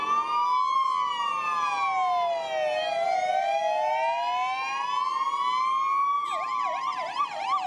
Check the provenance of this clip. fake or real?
real